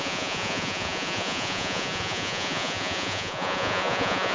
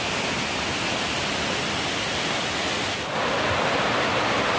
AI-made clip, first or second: first